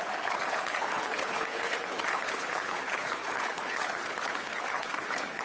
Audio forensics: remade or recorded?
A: remade